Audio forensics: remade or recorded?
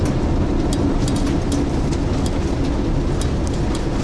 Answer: recorded